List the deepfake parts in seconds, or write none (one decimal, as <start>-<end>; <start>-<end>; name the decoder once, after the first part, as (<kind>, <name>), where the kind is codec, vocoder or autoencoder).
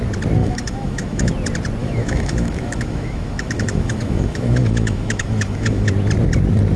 0.4-1.3 (autoencoder, DAC-VAE); 1.8-5.9